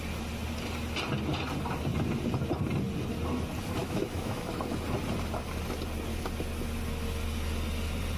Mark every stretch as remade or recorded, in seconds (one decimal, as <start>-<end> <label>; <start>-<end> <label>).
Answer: 0.0-3.8 recorded; 3.8-4.5 remade; 4.5-8.2 recorded